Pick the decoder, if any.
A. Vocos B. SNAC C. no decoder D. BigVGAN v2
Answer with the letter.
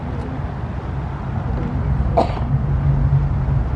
C